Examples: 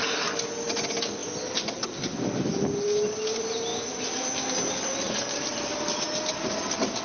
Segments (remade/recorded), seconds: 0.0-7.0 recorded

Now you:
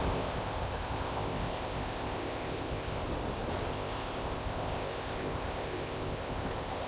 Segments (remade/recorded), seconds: 0.0-3.0 remade; 3.0-3.7 recorded; 3.7-6.9 remade